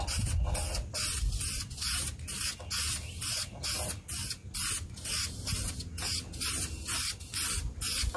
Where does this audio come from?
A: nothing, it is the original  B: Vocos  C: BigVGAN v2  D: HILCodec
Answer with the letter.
A